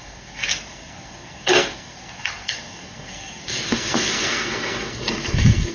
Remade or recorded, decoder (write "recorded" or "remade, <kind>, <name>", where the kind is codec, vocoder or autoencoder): remade, codec, SNAC